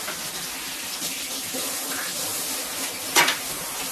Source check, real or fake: real